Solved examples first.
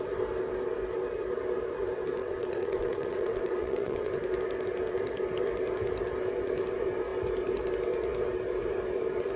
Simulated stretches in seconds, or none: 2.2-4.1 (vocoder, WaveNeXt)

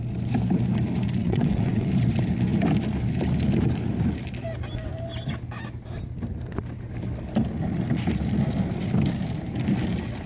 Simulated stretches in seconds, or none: 1.2-1.9 (vocoder, WaveNeXt)

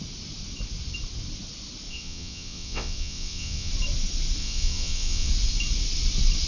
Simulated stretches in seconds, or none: 1.9-3.7 (vocoder, WaveNeXt); 4.4-5.3

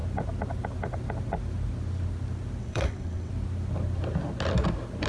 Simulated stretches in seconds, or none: 2.6-3.3 (vocoder, WaveNeXt)

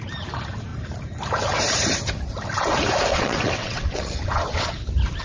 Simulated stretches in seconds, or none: 3.1-4.7 (vocoder, WaveNeXt)

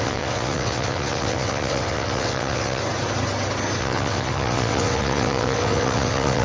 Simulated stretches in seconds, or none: 0.0-2.8 (vocoder, WaveNeXt); 3.8-6.4

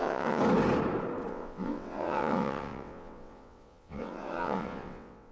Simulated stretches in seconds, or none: 0.0-0.4 (vocoder, WaveNeXt); 1.3-5.3

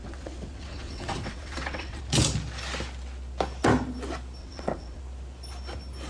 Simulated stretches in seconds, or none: 0.0-2.0 (vocoder, WaveNeXt); 4.4-5.0